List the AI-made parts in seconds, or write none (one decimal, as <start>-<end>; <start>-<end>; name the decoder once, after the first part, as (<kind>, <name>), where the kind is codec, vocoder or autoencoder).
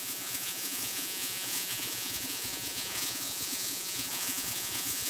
0.0-5.1 (vocoder, Vocos)